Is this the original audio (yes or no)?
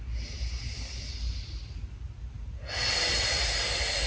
yes